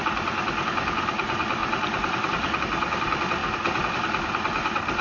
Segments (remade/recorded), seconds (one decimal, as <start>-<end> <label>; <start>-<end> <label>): 0.0-1.6 recorded; 1.6-2.6 remade; 2.6-5.0 recorded